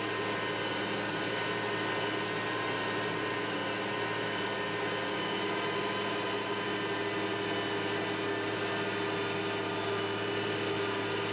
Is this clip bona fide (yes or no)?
yes